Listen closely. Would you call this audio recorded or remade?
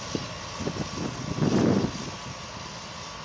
recorded